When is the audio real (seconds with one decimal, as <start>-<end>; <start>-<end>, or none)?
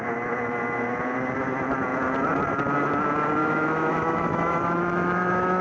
0.0-3.4